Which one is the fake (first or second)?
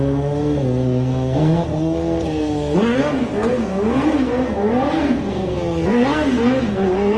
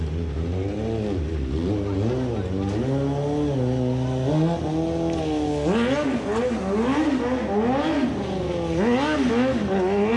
first